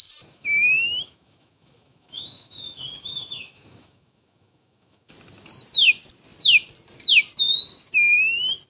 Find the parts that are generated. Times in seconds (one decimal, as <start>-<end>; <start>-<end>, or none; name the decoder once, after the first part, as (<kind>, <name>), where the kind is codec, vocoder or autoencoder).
0.0-5.1 (autoencoder, DAC-VAE)